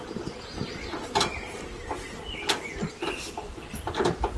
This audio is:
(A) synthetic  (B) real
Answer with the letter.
B